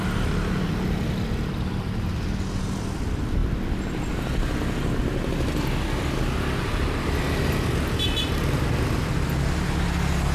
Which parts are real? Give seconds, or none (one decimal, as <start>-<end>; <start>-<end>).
0.0-10.3